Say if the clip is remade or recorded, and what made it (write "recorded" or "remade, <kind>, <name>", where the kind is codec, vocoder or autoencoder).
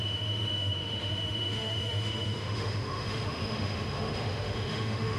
remade, autoencoder, DAC-VAE